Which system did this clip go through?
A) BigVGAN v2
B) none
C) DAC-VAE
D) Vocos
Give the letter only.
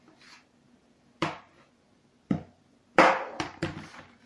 A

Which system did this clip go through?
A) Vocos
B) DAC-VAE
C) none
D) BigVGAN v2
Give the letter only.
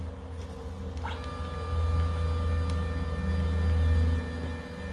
C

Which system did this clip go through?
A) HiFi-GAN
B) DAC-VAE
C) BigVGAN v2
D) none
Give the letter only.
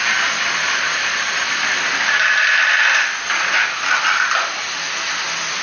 D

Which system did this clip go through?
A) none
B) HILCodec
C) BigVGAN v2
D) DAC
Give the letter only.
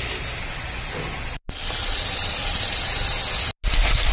A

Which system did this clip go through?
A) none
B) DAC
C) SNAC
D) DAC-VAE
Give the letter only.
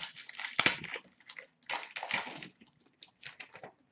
A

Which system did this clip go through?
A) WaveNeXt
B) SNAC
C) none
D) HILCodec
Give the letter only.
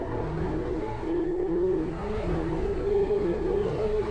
B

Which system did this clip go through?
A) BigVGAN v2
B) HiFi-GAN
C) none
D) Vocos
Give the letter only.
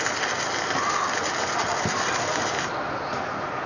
C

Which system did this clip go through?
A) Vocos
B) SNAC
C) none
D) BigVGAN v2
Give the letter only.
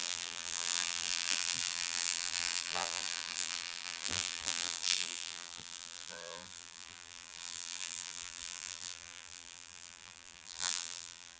D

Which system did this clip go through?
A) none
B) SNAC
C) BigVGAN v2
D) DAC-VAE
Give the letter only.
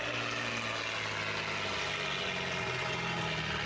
A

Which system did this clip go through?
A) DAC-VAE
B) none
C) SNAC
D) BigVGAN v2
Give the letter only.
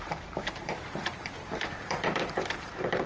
D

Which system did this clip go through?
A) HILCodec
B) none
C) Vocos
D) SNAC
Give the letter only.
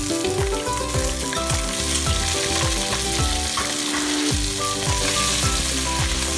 B